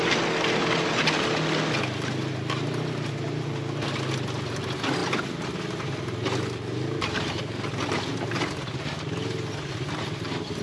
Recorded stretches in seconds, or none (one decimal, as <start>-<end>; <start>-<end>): 0.0-10.6